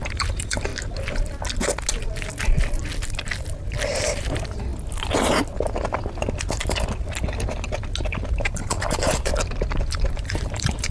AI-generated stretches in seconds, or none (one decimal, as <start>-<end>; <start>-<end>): 0.0-0.7; 3.9-4.7; 8.3-9.3; 9.8-10.9